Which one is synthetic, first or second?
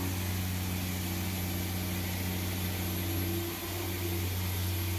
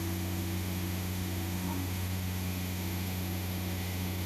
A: second